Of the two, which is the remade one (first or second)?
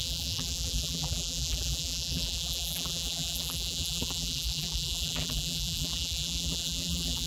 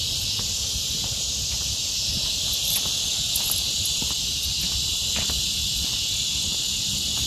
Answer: first